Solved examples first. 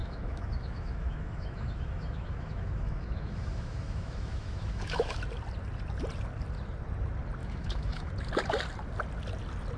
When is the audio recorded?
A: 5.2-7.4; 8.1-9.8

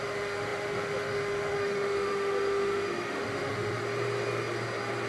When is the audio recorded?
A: 3.8-5.1

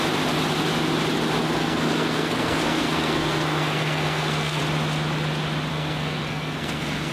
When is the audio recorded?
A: 0.0-1.4; 4.6-5.7